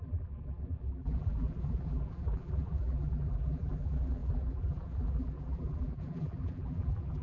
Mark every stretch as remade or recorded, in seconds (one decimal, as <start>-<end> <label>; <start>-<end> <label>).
0.0-7.2 remade